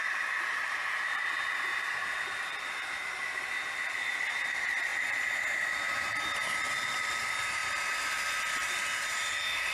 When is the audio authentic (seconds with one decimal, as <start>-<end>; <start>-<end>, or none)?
3.0-3.6; 4.9-5.9; 7.6-8.4